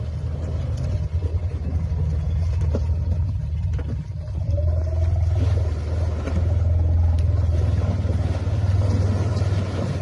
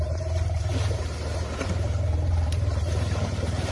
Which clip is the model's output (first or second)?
second